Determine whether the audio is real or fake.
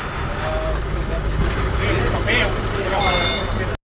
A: real